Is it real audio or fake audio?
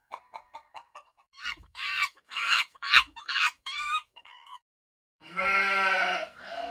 fake